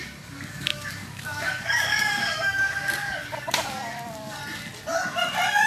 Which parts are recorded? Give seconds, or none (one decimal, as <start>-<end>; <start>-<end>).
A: 4.4-5.7